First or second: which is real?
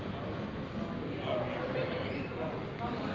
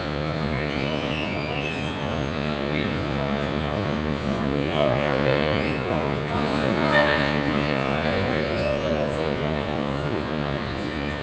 first